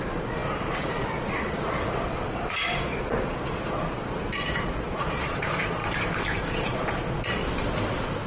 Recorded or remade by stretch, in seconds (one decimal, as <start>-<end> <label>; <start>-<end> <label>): 0.0-5.8 remade; 5.8-6.5 recorded; 6.5-7.4 remade; 7.4-8.3 recorded